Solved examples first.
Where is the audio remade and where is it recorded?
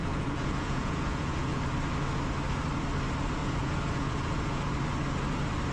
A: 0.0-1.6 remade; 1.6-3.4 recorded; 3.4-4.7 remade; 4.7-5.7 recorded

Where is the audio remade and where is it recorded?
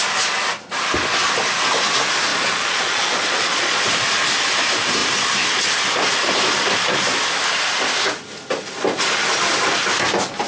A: 0.0-2.3 recorded; 2.3-3.8 remade; 3.8-10.5 recorded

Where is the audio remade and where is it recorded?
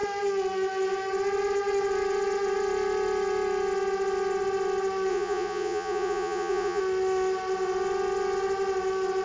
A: 0.0-5.1 recorded; 5.1-6.8 remade; 6.8-9.2 recorded